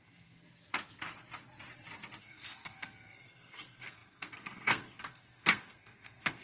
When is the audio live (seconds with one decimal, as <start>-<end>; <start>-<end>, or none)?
0.4-2.2